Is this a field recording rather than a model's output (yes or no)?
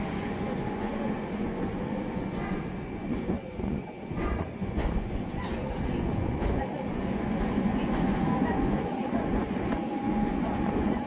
no